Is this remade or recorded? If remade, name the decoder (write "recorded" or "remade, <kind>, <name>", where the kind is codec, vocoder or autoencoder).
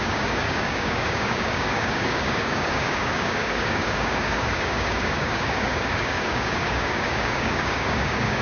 remade, codec, DAC